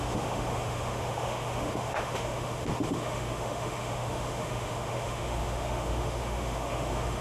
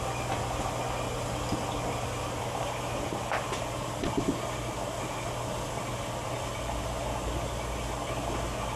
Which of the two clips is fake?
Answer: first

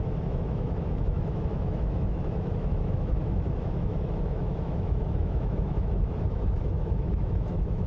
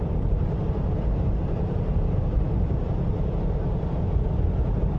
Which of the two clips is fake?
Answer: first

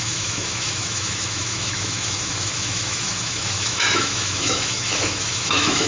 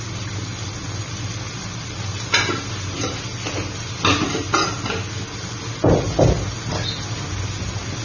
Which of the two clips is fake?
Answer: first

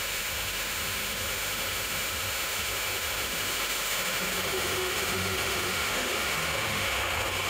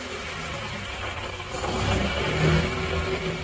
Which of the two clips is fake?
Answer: first